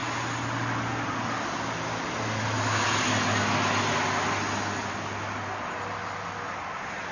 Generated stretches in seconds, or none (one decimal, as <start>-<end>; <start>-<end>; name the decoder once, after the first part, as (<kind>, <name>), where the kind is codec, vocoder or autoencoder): none